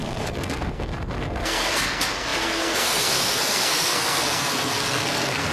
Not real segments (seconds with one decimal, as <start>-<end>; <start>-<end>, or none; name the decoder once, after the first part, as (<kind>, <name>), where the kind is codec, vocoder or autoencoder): 0.0-5.5 (codec, SNAC)